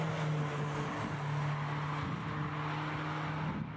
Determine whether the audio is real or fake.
real